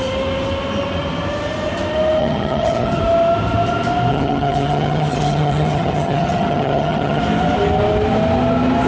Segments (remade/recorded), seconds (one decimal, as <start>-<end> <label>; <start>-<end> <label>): 0.0-2.2 recorded; 2.2-3.0 remade; 3.0-4.1 recorded; 4.1-7.2 remade; 7.2-8.9 recorded